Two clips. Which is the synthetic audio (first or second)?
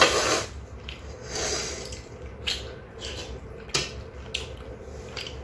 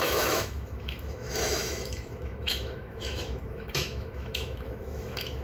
second